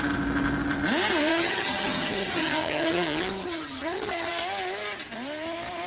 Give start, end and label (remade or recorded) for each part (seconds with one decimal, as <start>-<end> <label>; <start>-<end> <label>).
0.0-1.3 recorded; 1.3-4.3 remade; 4.3-5.9 recorded

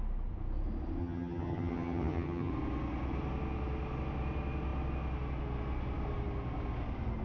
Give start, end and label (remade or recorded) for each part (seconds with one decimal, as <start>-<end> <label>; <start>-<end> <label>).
0.0-1.0 recorded; 1.0-2.5 remade; 2.5-7.2 recorded